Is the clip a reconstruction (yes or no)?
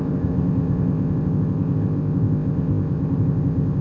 yes